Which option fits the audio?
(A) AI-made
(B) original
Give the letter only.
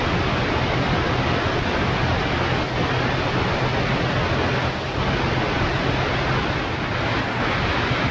B